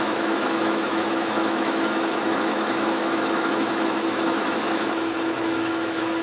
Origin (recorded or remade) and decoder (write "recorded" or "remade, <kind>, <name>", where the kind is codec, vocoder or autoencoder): remade, autoencoder, DAC-VAE